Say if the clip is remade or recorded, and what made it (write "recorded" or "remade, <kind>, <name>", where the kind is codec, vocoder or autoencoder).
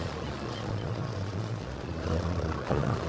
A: remade, vocoder, Vocos